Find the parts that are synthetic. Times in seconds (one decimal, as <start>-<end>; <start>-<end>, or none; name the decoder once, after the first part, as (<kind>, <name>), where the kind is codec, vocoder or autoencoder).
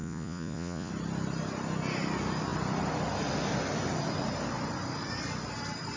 0.0-0.9 (vocoder, Vocos)